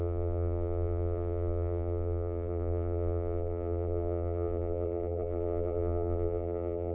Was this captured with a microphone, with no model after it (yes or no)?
no